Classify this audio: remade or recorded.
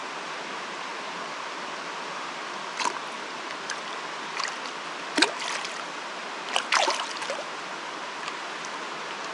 recorded